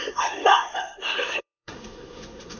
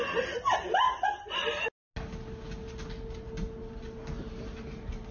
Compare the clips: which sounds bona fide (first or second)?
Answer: second